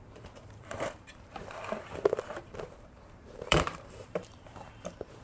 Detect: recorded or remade remade